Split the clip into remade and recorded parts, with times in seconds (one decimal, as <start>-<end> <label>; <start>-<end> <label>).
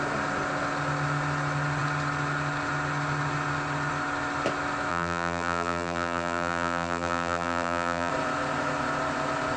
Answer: 0.0-4.9 recorded; 4.9-8.1 remade; 8.1-9.6 recorded